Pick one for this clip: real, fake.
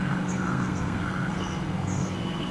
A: fake